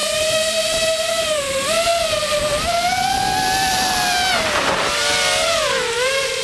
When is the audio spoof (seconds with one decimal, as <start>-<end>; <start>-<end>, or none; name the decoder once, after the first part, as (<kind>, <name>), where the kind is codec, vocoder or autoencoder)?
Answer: 0.0-1.9 (vocoder, BigVGAN v2); 5.7-6.4